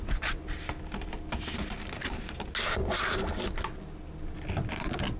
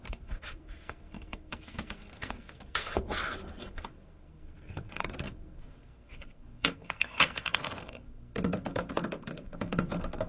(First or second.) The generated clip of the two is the second